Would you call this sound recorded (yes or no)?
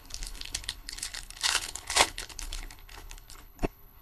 no